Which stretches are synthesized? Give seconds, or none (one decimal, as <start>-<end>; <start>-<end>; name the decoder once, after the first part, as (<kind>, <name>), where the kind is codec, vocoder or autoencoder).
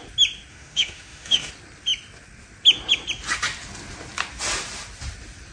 0.5-1.5 (autoencoder, DAC-VAE)